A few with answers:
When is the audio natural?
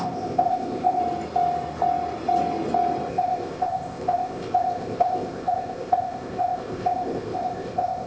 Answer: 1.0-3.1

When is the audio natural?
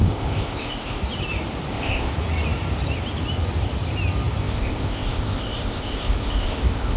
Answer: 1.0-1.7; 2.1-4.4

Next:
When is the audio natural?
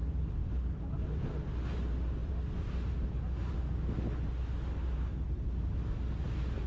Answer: 0.0-6.7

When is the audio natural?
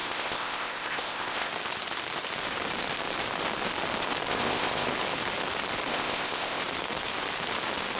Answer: 1.5-4.3; 4.9-5.9; 6.6-8.0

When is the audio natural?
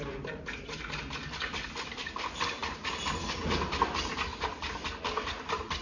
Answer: 0.0-5.8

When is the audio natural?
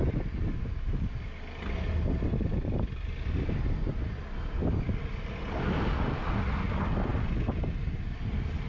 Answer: 0.0-8.7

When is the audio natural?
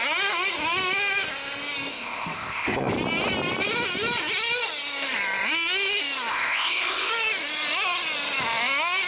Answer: 0.0-1.9; 2.9-6.3; 7.1-9.1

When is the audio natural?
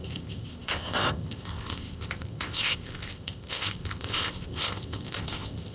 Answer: none